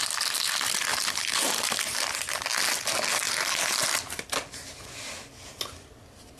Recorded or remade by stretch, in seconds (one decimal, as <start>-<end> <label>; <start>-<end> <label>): 0.0-6.4 recorded